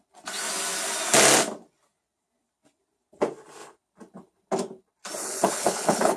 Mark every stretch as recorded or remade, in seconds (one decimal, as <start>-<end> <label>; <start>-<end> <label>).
0.0-5.2 recorded; 5.2-6.2 remade